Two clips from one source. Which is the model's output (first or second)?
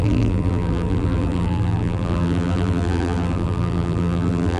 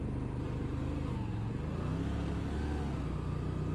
first